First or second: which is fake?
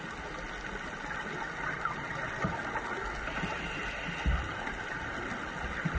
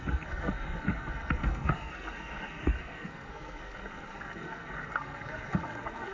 second